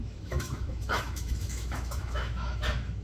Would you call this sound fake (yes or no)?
yes